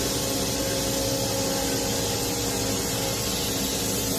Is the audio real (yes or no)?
yes